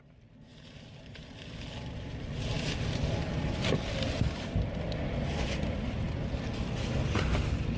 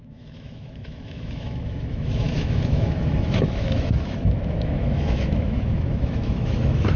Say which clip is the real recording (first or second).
first